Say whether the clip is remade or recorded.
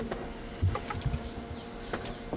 recorded